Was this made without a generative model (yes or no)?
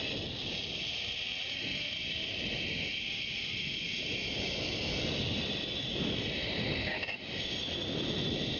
yes